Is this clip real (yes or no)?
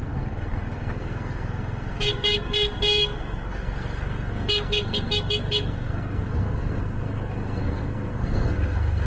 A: no